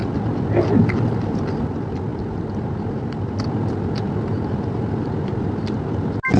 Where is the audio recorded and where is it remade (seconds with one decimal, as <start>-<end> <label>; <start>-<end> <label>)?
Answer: 0.0-6.4 recorded